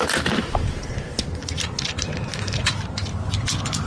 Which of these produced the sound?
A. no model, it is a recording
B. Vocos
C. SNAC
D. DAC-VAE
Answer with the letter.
A